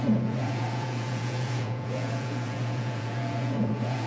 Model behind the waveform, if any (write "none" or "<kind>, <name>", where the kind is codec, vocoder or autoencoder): vocoder, Vocos